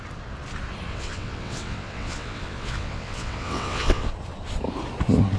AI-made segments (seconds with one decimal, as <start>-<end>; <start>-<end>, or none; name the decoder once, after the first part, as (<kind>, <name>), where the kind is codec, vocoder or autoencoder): 0.9-4.1 (vocoder, WaveNeXt)